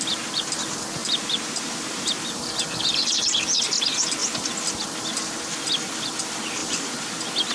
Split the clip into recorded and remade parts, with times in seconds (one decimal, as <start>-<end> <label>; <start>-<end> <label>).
0.0-1.0 recorded; 1.0-2.4 remade; 2.4-6.6 recorded; 6.6-7.1 remade; 7.1-7.5 recorded